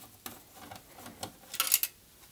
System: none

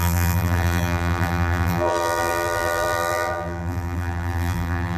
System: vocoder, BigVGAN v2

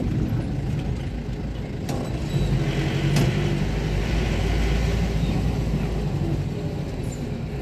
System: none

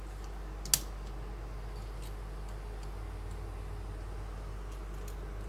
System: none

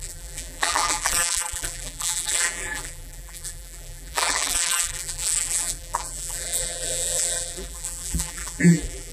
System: vocoder, BigVGAN v2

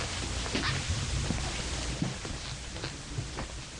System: none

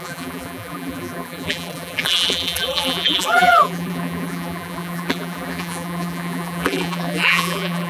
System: vocoder, BigVGAN v2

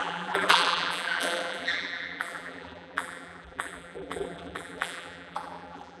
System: vocoder, BigVGAN v2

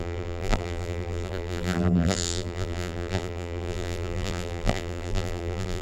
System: vocoder, BigVGAN v2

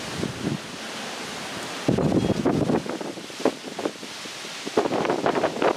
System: none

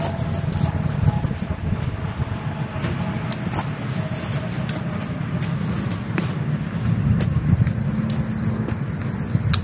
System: none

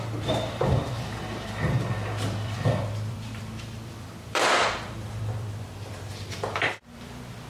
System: vocoder, BigVGAN v2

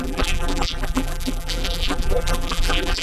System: vocoder, BigVGAN v2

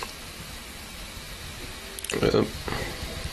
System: none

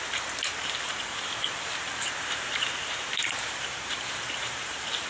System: vocoder, BigVGAN v2